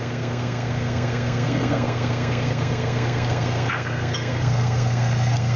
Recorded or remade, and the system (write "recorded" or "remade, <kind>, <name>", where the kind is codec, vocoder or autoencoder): remade, codec, SNAC